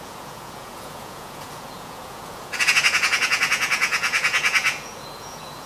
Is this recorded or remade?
remade